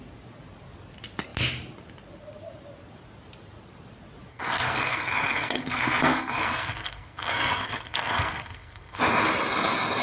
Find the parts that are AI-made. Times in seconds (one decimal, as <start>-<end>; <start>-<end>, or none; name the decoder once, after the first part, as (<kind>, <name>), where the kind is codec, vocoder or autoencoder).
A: 4.3-9.0 (codec, SNAC)